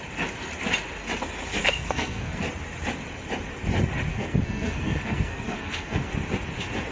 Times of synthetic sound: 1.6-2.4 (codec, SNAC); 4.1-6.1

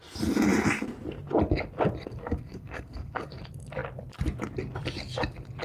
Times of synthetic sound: 2.2-3.4 (codec, SNAC)

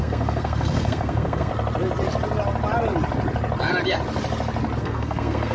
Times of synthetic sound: 0.0-1.5 (codec, SNAC); 4.8-5.5

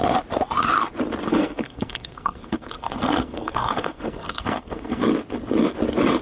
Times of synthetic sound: 1.3-5.0 (codec, SNAC)

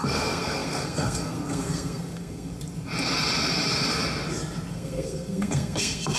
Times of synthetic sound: 0.0-2.5 (codec, SNAC); 4.7-6.2

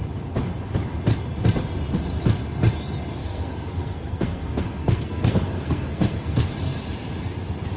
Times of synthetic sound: 3.2-6.5 (codec, SNAC)